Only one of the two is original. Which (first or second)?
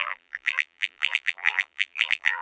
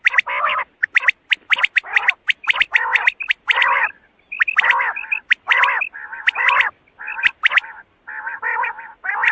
second